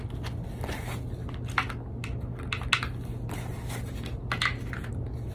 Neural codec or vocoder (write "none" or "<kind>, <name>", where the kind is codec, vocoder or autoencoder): none